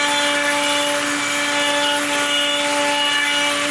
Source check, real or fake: real